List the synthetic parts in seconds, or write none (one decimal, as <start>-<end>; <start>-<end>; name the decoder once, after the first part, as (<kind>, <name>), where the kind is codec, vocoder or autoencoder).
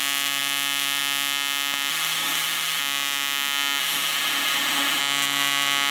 1.9-2.8 (autoencoder, DAC-VAE); 3.8-5.0